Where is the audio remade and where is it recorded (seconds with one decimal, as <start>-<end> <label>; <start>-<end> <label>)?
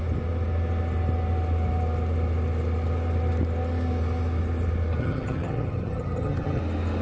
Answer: 0.0-5.0 recorded; 5.0-6.6 remade; 6.6-7.0 recorded